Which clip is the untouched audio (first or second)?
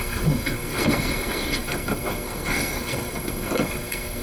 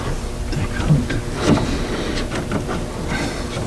second